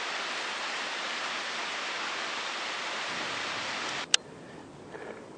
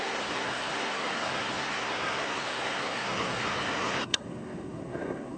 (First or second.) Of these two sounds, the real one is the first